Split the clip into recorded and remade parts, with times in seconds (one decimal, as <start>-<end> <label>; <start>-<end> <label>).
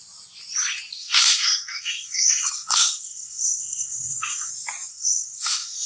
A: 0.0-1.0 recorded; 1.0-4.5 remade; 4.5-4.9 recorded; 4.9-5.9 remade